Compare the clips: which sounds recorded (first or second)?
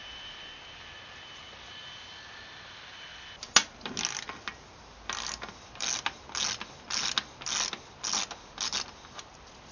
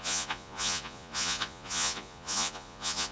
first